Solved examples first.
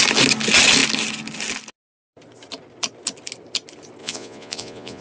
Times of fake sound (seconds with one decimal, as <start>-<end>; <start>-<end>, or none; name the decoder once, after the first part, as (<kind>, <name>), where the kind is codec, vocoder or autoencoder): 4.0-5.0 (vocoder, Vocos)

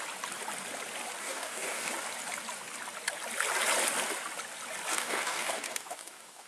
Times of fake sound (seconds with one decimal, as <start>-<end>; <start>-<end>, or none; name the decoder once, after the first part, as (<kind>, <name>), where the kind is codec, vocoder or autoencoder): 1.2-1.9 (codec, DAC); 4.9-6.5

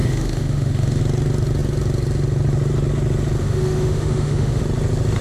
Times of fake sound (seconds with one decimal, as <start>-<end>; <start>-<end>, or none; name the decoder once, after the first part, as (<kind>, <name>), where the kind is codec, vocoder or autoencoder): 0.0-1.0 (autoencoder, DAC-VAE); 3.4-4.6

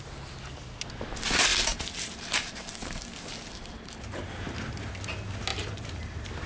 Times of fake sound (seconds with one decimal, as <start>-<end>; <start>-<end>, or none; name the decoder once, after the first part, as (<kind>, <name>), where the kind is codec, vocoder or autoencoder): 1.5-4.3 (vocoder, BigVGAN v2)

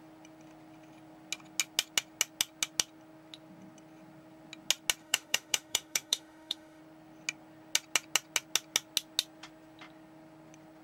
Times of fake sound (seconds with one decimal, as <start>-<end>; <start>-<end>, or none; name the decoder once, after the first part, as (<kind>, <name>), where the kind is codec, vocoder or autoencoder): 5.0-6.8 (autoencoder, DAC-VAE)

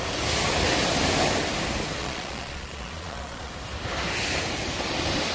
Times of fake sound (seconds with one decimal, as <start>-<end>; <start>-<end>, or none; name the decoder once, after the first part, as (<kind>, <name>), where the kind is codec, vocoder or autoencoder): 2.0-3.5 (vocoder, Vocos)

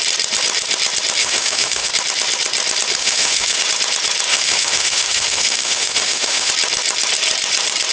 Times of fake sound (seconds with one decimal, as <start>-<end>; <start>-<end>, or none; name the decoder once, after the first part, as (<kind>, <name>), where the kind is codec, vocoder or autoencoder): 1.2-1.9 (autoencoder, DAC-VAE); 3.0-3.6; 4.3-6.5